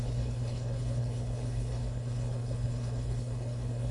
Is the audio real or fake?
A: fake